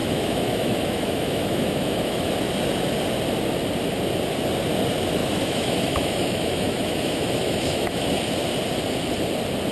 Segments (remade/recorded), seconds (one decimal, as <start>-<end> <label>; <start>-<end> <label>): 0.0-2.3 remade; 2.3-5.2 recorded; 5.2-8.2 remade; 8.2-9.7 recorded